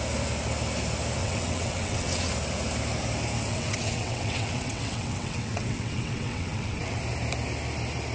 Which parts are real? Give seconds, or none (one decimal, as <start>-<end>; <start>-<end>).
0.0-1.2; 2.3-3.5; 7.0-8.1